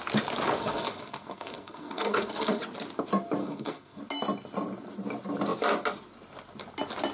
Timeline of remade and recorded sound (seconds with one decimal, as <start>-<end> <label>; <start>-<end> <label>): 0.0-0.6 recorded; 0.6-2.6 remade; 2.6-3.4 recorded; 3.4-4.0 remade; 4.0-7.1 recorded